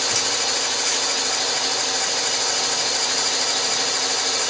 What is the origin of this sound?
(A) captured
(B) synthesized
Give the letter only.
A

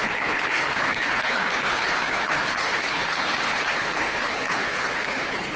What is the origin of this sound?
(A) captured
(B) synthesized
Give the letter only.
B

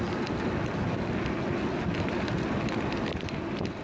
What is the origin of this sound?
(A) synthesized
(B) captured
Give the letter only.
B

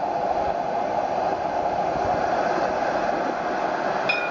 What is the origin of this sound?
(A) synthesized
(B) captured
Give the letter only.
B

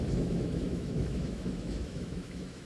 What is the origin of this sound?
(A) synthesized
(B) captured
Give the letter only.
A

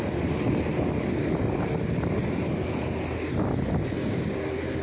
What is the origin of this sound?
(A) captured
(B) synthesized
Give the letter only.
A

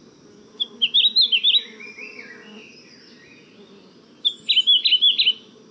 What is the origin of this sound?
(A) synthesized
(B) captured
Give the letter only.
B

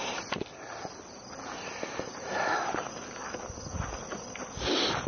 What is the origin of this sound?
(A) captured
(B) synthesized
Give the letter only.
A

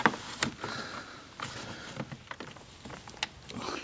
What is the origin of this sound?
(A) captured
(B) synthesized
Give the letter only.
A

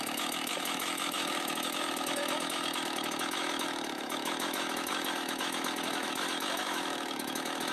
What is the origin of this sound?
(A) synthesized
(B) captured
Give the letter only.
A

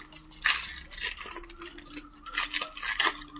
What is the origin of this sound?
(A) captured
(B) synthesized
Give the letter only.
A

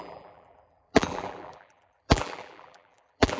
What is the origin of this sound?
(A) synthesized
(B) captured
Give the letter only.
A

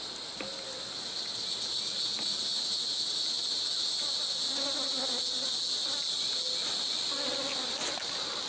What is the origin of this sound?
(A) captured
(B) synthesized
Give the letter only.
A